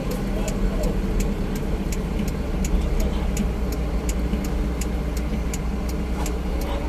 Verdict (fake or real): real